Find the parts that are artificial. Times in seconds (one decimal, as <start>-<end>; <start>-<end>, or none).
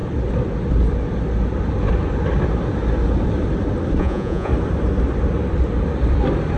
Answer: 4.0-4.5